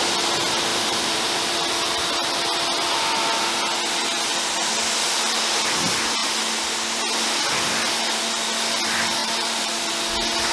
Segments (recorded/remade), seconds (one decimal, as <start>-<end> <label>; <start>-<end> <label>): 0.0-0.7 recorded; 0.7-1.6 remade; 1.6-9.2 recorded; 9.2-9.9 remade; 9.9-10.5 recorded